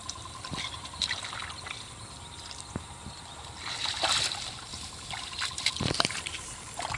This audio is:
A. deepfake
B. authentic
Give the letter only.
A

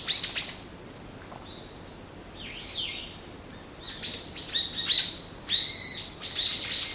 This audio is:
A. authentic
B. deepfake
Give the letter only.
A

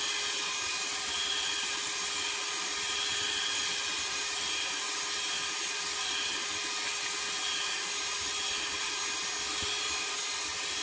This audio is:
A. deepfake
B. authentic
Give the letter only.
B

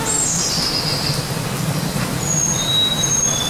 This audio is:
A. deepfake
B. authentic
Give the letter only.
B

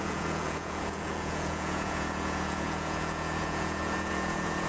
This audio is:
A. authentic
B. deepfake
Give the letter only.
B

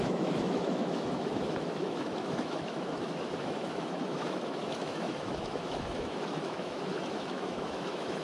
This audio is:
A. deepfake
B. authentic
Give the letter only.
A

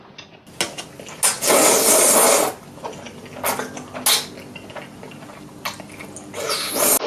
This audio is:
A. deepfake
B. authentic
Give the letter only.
B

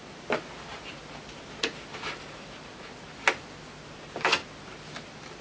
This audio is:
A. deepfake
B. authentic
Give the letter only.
B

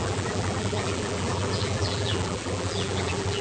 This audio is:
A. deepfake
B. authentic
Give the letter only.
A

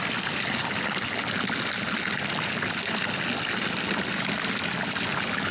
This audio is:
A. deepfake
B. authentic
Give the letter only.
B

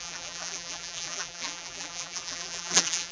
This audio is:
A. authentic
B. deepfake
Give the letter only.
B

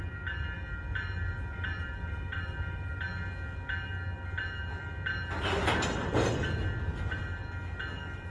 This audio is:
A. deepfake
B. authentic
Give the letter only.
B